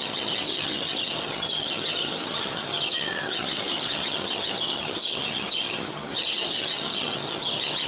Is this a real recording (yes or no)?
no